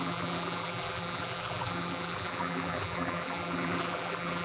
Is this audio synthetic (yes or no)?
yes